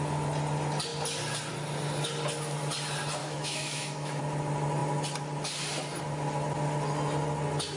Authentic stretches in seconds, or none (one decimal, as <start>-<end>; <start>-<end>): 0.0-3.2; 4.2-7.8